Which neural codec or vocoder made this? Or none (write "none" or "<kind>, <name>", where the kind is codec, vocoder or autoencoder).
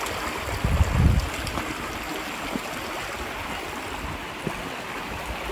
none